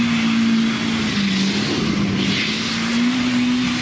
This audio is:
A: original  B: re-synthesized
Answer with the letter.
A